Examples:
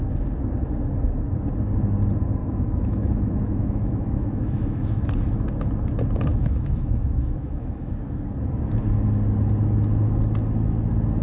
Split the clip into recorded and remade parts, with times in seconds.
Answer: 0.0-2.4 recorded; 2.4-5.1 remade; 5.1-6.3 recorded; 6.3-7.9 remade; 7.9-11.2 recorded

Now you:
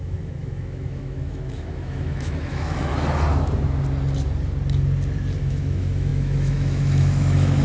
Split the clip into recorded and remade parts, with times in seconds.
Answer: 0.0-2.9 remade; 2.9-5.4 recorded; 5.4-7.6 remade

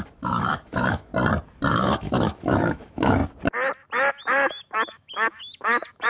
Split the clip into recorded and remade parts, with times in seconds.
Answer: 0.0-1.1 remade; 1.1-1.7 recorded; 1.7-3.2 remade; 3.2-4.1 recorded; 4.1-6.1 remade

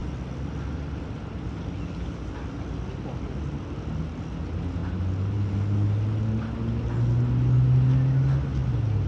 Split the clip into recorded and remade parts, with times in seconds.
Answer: 0.0-9.1 recorded

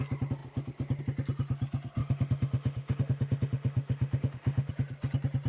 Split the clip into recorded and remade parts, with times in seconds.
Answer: 0.0-2.0 recorded; 2.0-4.7 remade; 4.7-5.5 recorded